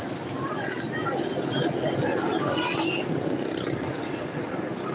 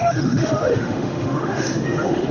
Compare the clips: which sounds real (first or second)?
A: first